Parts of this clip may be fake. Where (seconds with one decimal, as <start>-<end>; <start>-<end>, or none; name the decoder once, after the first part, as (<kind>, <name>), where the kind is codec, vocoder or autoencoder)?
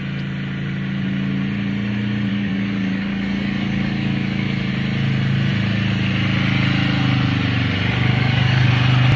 2.3-4.7 (codec, DAC); 8.1-8.7